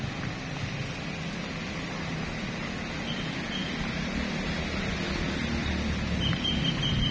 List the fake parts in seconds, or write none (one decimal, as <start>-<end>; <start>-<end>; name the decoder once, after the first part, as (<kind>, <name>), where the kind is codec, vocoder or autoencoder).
none